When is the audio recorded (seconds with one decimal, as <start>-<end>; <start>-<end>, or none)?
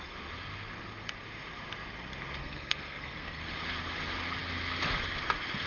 0.0-2.4; 3.5-5.7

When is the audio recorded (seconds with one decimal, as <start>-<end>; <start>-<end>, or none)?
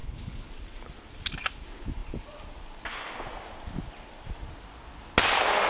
0.5-5.7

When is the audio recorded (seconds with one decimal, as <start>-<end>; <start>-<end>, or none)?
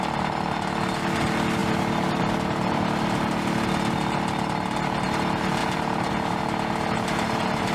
0.0-5.6; 6.4-7.7